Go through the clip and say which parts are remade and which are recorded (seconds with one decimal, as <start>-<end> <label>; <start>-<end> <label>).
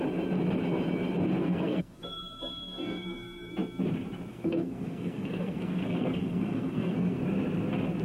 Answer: 0.0-1.4 recorded; 1.4-3.5 remade; 3.5-4.3 recorded; 4.3-7.2 remade; 7.2-8.0 recorded